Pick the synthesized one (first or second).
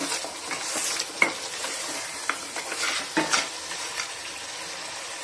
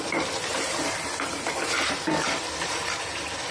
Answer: second